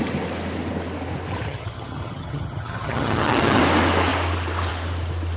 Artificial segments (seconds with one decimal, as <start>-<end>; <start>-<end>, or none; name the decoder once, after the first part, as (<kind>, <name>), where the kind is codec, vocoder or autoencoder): 1.5-3.6 (vocoder, HiFi-GAN)